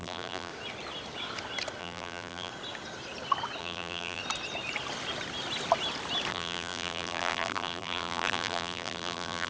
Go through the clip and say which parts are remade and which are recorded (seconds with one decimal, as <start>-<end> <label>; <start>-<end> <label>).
0.0-0.5 remade; 0.5-1.8 recorded; 1.8-2.5 remade; 2.5-3.6 recorded; 3.6-4.2 remade; 4.2-6.3 recorded; 6.3-9.5 remade